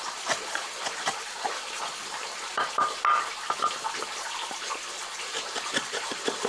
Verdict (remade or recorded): recorded